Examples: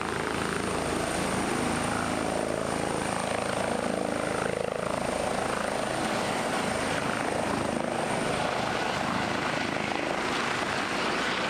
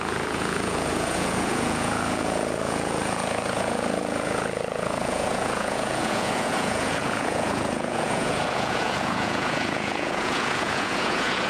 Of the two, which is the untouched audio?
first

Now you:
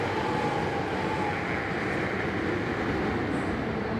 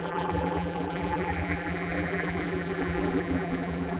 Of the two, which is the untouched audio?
first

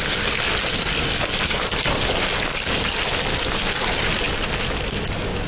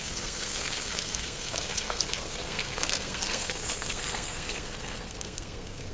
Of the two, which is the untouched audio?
first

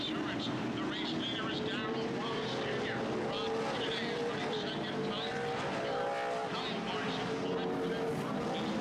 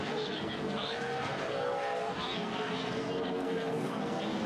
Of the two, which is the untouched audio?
first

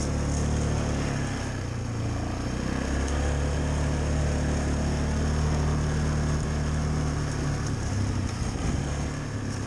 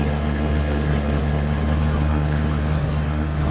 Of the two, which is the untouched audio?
first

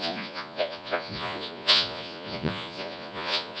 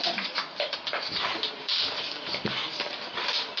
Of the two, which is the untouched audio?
second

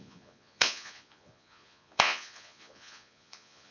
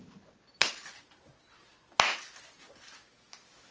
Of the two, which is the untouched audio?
second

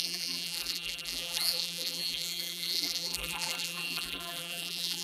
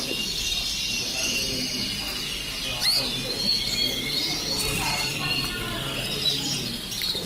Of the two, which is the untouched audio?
second